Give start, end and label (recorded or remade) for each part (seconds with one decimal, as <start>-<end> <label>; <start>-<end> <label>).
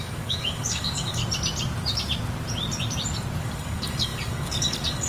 0.0-1.2 remade; 1.2-3.4 recorded; 3.4-5.1 remade